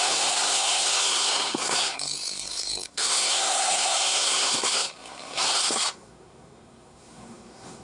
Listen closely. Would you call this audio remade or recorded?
remade